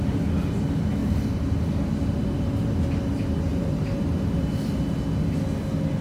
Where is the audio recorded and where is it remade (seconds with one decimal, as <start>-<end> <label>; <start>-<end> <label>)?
0.0-1.0 recorded; 1.0-1.8 remade; 1.8-3.5 recorded; 3.5-4.5 remade; 4.5-6.0 recorded